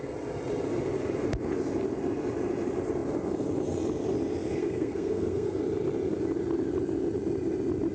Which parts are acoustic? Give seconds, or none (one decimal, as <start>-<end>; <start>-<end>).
0.0-4.6; 5.6-7.9